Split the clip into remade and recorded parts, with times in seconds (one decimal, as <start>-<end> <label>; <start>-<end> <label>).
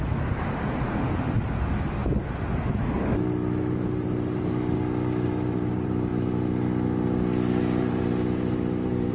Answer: 0.0-2.0 remade; 2.0-5.2 recorded; 5.2-6.1 remade; 6.1-7.8 recorded; 7.8-9.1 remade